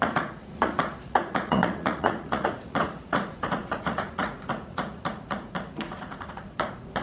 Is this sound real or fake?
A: fake